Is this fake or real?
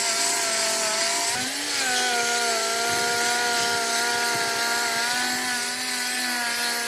real